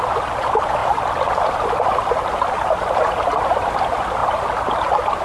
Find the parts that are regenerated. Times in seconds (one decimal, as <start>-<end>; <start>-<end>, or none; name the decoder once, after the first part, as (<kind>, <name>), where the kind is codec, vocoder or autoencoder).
none